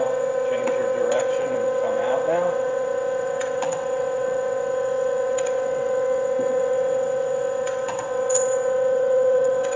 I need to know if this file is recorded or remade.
remade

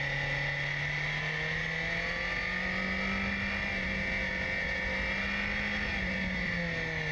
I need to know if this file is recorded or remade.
recorded